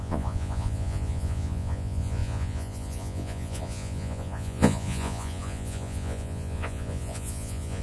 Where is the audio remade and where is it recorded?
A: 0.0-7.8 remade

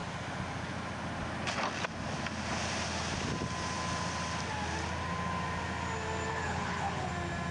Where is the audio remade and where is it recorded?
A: 0.0-6.3 recorded; 6.3-7.1 remade; 7.1-7.5 recorded

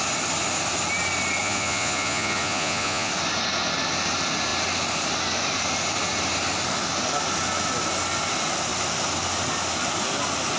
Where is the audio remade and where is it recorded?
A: 0.0-1.4 recorded; 1.4-3.1 remade; 3.1-10.6 recorded